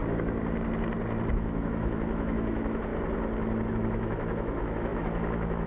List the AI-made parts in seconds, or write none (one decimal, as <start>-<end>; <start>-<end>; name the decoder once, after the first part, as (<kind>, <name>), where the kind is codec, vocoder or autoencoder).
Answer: 1.3-2.9 (autoencoder, DAC-VAE); 3.7-5.7